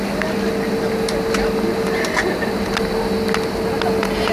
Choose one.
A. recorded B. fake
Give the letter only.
A